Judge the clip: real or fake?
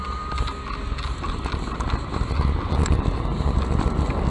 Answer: real